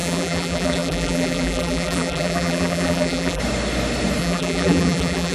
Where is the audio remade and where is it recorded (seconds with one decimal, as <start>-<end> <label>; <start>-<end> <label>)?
0.0-3.4 remade; 3.4-4.2 recorded; 4.2-5.3 remade